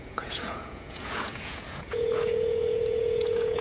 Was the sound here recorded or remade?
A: remade